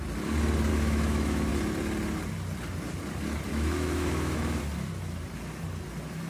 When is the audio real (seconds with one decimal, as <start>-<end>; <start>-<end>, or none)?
0.0-0.7; 1.5-3.5; 4.6-6.3